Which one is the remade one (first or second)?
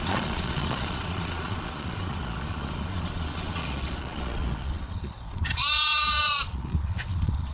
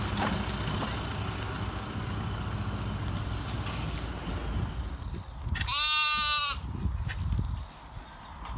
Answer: first